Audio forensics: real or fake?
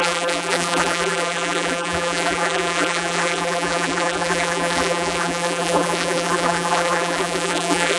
fake